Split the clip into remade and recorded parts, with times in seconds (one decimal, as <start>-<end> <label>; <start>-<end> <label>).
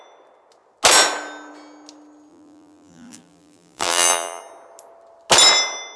0.0-2.3 recorded; 2.3-4.4 remade; 4.4-6.0 recorded